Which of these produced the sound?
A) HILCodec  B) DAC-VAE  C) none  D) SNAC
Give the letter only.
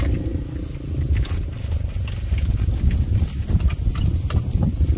C